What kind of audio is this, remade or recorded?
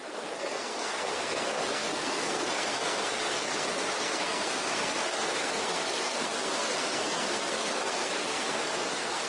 remade